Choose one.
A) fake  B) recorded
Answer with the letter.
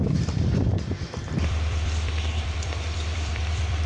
A